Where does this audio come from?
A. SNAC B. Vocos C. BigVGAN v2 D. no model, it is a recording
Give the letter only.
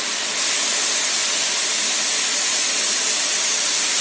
D